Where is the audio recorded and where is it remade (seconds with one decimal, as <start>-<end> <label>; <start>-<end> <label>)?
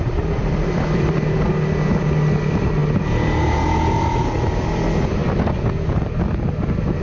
0.0-0.4 recorded; 0.4-1.2 remade; 1.2-7.0 recorded